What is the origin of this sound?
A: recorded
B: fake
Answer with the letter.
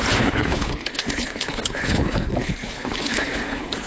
B